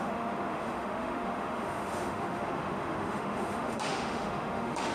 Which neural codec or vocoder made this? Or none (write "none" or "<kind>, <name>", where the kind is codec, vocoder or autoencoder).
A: autoencoder, DAC-VAE